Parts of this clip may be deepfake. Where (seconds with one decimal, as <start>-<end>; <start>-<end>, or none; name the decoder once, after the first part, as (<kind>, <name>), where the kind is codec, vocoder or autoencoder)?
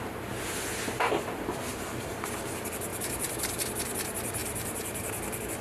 1.7-2.4 (vocoder, BigVGAN v2); 2.9-3.6; 4.4-5.1